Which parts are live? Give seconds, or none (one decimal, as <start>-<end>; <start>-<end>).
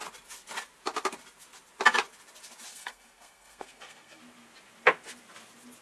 0.0-2.7; 4.2-5.8